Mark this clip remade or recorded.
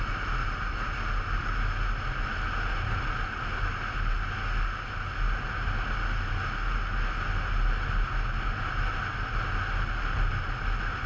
recorded